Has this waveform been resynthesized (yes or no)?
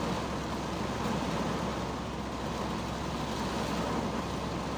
no